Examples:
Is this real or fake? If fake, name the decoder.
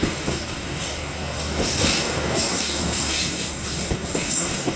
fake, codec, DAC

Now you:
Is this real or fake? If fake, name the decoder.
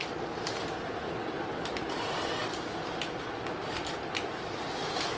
real